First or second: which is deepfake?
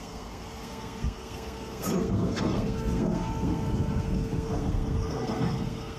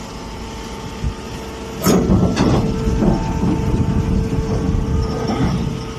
first